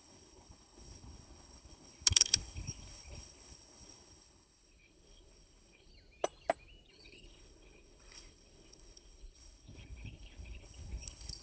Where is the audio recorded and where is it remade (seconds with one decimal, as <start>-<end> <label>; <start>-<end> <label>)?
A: 0.0-5.9 remade; 5.9-6.9 recorded; 6.9-11.4 remade